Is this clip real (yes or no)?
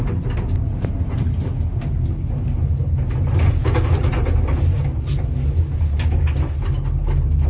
yes